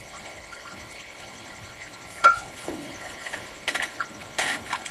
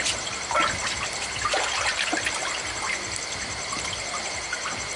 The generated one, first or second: first